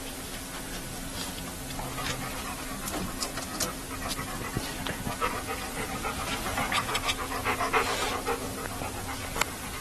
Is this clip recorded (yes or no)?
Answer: yes